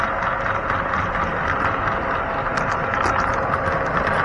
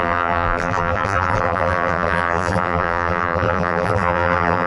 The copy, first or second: second